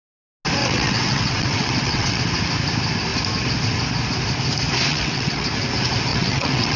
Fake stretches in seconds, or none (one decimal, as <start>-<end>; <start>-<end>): 0.6-2.2; 4.9-5.5; 6.1-6.8